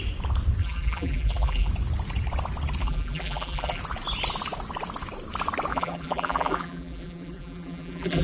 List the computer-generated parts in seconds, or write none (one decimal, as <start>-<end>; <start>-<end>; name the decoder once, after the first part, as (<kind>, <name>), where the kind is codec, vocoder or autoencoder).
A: 0.6-1.7 (vocoder, BigVGAN v2); 2.8-3.8; 5.7-8.2

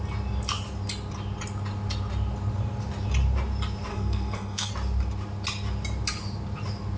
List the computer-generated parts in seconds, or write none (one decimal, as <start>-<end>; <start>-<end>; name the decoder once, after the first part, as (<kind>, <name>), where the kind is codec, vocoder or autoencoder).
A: 3.9-4.7 (codec, SNAC)

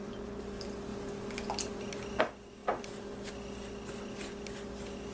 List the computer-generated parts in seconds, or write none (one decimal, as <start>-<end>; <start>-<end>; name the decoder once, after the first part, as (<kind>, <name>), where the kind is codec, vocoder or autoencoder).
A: none

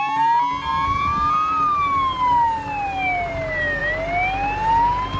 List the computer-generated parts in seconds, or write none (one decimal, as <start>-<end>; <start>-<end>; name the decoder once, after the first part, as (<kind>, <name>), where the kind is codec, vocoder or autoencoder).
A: none

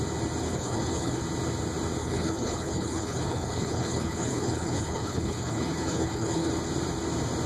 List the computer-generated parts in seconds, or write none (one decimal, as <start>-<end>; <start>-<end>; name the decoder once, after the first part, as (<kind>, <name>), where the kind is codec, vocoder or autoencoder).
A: 0.4-1.2 (codec, HILCodec); 2.0-6.5

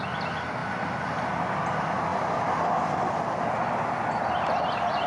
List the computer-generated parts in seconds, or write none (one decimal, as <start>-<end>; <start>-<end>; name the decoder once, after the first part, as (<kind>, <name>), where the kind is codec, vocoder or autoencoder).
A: none

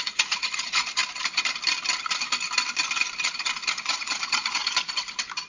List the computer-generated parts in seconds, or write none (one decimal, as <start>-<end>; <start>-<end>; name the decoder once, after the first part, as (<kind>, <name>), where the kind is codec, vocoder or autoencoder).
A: 0.0-1.0 (vocoder, Vocos); 3.7-4.6

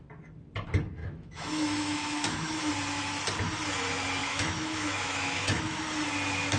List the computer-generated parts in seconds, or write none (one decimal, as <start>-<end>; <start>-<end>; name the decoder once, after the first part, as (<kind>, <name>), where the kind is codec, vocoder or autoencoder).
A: 1.0-2.7 (autoencoder, DAC-VAE); 4.2-5.8